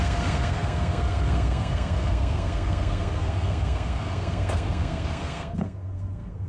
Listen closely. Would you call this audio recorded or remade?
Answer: remade